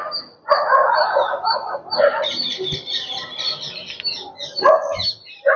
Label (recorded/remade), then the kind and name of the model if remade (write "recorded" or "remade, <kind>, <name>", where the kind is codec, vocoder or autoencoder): recorded